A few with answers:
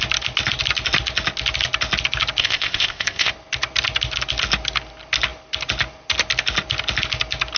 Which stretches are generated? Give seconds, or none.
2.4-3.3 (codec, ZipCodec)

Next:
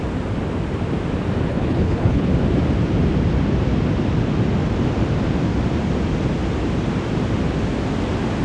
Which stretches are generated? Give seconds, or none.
1.5-2.3 (codec, HILCodec)

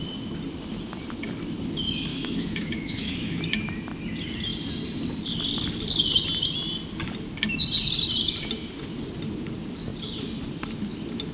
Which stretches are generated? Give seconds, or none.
2.1-3.4 (autoencoder, DAC-VAE)